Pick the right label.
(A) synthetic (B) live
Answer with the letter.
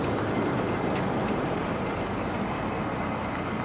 B